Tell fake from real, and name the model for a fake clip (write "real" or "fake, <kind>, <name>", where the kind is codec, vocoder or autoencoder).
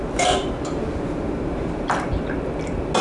real